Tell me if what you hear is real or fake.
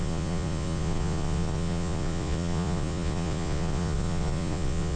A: fake